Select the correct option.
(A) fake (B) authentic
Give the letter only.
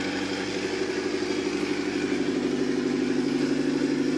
B